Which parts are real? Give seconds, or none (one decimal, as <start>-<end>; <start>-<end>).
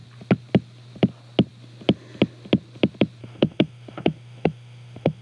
0.0-3.2